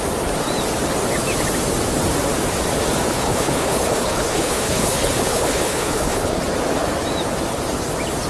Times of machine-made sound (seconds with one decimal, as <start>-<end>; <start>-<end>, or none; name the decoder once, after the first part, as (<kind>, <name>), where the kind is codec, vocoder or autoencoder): 3.1-6.4 (codec, HILCodec)